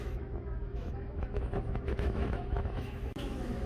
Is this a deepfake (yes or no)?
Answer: yes